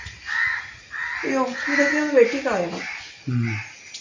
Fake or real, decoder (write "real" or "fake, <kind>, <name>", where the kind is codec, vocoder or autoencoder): real